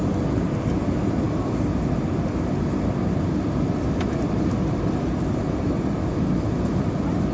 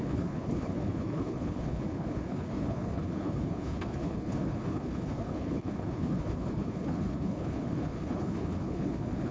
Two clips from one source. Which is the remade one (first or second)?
second